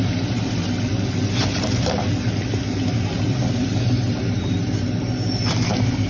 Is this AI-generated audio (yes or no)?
yes